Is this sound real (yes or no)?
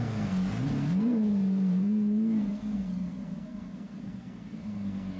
no